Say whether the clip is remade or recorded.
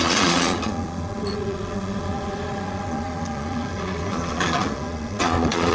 remade